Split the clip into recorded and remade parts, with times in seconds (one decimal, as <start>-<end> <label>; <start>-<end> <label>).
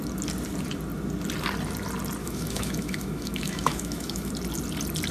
0.0-2.2 recorded; 2.2-4.3 remade; 4.3-5.1 recorded